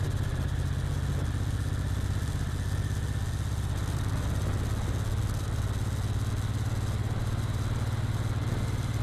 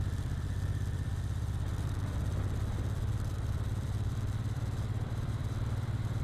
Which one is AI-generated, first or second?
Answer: second